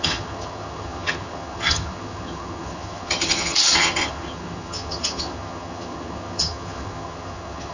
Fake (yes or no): yes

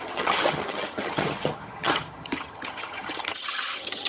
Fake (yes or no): yes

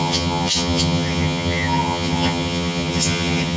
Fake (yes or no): yes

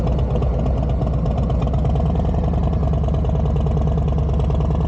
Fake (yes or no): no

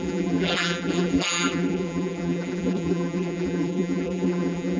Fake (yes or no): yes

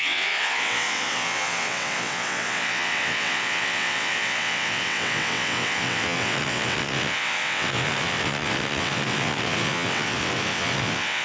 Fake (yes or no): yes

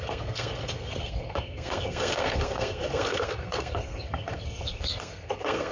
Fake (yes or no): yes